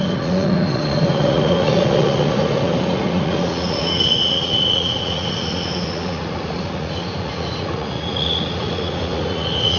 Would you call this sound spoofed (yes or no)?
yes